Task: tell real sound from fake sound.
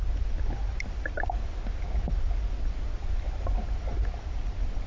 real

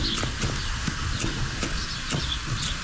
real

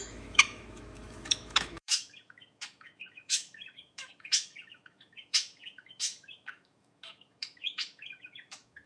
fake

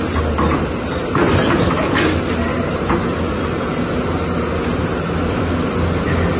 real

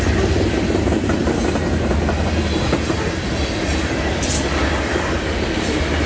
real